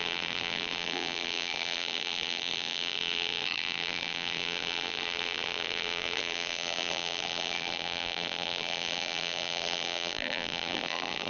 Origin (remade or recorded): remade